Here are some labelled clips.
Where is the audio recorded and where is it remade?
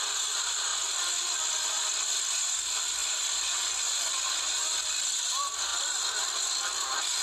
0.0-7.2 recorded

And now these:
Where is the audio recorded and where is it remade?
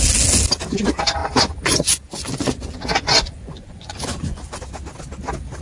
0.0-1.2 recorded; 1.2-4.6 remade; 4.6-5.6 recorded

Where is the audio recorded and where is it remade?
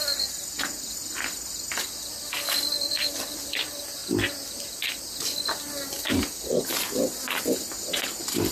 0.0-8.5 recorded